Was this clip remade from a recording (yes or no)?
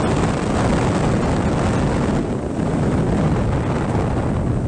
no